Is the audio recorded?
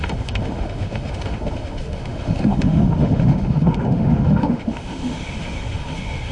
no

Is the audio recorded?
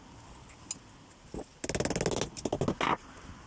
yes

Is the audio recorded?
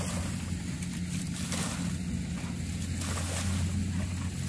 yes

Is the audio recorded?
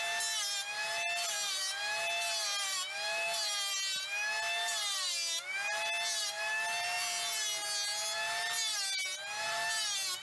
yes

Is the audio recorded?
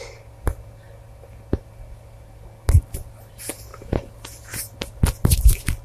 yes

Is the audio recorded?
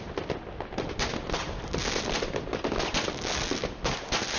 yes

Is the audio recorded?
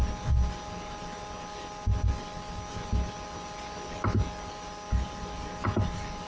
yes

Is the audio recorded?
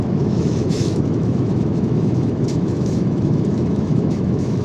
no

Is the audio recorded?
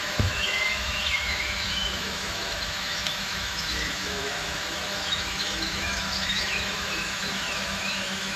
no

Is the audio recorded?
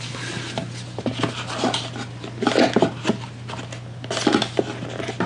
yes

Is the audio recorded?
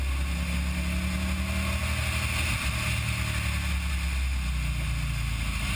yes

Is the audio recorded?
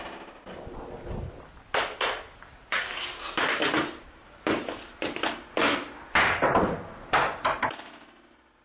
yes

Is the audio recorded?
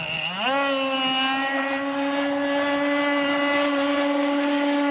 yes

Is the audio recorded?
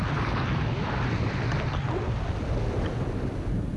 yes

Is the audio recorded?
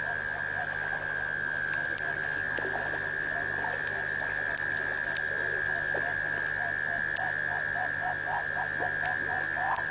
yes